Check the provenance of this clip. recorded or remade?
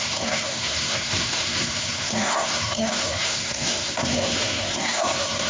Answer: remade